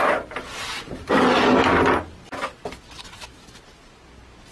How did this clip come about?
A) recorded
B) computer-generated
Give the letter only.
A